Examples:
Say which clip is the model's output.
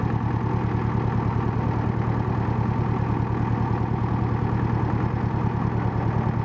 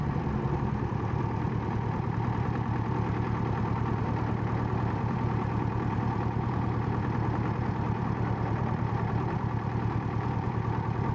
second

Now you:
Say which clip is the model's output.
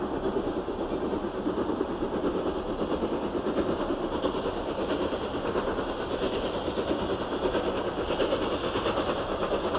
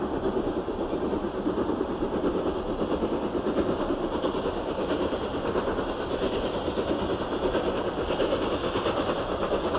second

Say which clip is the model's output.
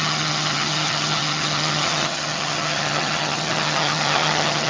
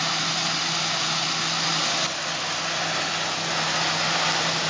first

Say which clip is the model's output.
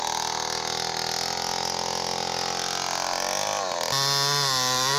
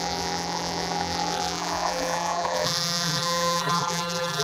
second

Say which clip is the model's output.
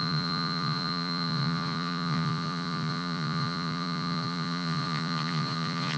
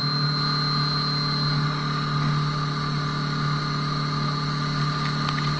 first